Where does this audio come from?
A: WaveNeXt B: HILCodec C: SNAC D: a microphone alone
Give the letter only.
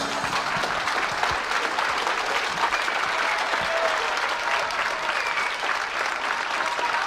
D